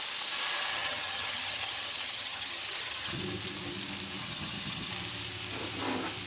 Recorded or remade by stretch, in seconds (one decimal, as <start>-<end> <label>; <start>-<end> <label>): 0.0-0.7 recorded; 0.7-3.2 remade; 3.2-4.2 recorded; 4.2-4.9 remade; 4.9-6.3 recorded